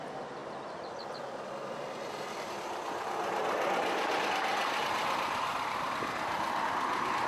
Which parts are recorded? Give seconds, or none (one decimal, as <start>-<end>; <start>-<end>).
0.0-7.3